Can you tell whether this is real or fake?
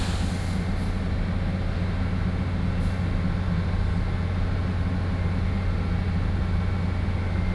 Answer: real